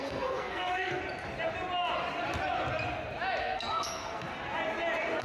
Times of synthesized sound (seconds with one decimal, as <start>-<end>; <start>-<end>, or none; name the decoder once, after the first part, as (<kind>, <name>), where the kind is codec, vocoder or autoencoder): 0.0-1.0 (codec, SNAC); 3.4-4.3